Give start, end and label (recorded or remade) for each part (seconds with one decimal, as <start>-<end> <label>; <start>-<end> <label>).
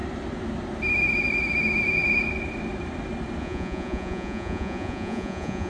0.0-3.4 recorded; 3.4-5.7 remade